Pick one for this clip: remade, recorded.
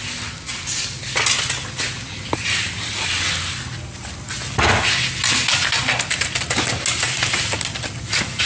recorded